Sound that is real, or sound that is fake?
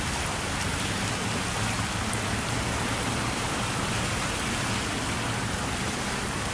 real